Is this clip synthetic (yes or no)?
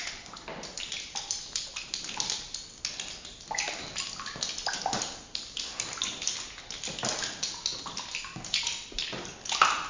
no